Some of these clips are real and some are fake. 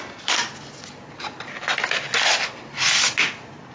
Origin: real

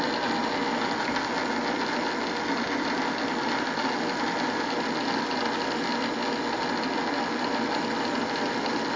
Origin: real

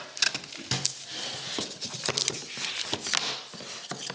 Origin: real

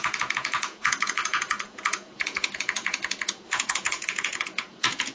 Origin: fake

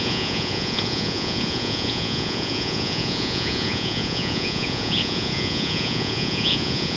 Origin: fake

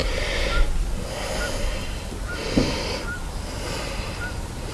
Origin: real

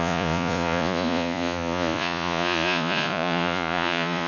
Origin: fake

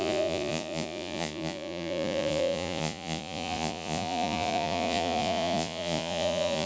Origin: fake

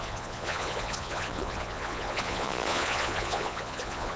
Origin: fake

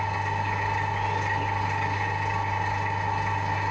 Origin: real